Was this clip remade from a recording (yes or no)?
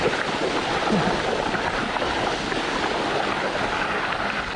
no